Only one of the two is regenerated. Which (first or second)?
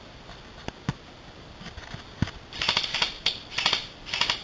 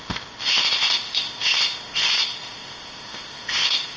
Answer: second